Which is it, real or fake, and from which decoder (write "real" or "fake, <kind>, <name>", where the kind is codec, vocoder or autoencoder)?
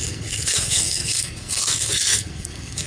fake, codec, SNAC